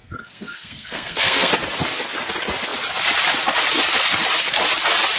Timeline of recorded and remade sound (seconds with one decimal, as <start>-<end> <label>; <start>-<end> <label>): 0.0-1.5 remade; 1.5-5.2 recorded